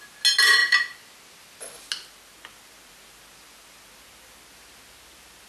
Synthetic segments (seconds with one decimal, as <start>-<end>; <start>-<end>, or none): none